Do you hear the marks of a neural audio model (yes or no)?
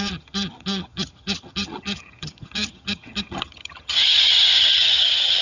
yes